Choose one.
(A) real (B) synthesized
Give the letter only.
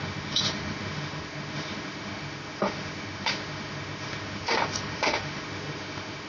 B